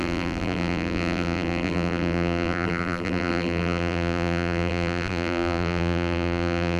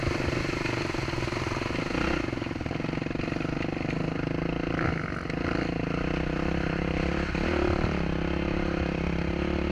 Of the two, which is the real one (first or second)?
second